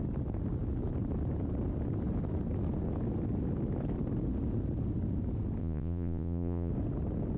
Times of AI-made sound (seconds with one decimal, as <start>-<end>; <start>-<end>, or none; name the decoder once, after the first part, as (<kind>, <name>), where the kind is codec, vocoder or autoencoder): 5.6-6.7 (vocoder, Vocos)